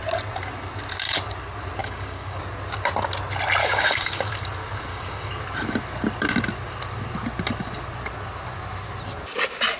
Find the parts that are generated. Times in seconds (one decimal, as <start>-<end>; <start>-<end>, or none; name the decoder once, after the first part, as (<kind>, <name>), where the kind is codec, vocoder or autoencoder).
1.8-2.4 (codec, DAC); 3.6-4.3; 4.9-5.4